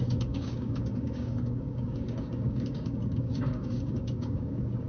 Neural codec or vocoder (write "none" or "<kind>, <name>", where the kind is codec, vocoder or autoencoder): codec, DAC